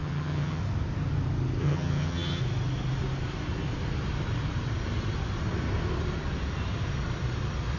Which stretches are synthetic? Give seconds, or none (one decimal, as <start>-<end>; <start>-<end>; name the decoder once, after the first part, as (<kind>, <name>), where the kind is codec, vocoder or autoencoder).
0.0-0.6 (vocoder, HiFi-GAN); 1.6-2.4